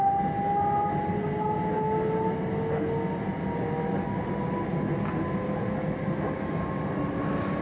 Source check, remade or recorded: recorded